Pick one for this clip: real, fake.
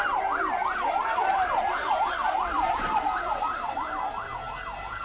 fake